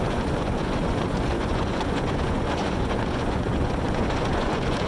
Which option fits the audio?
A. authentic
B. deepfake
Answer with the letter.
B